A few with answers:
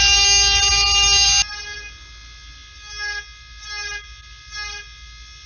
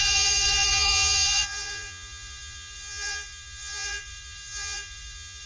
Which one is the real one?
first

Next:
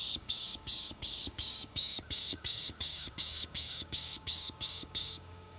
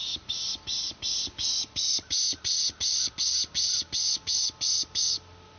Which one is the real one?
second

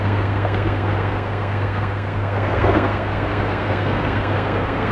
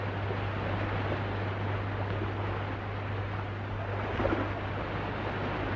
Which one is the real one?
second